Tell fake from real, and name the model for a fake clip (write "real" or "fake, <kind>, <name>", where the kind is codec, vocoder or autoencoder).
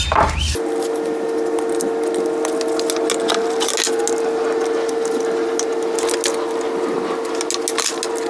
real